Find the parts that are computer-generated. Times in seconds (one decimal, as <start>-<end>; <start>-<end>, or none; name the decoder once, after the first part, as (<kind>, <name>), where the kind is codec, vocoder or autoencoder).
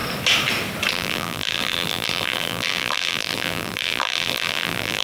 0.9-5.0 (vocoder, BigVGAN v2)